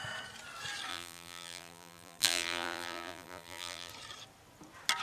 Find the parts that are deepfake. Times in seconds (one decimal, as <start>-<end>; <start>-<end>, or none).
0.9-3.9